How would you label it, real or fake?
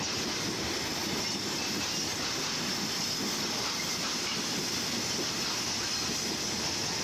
real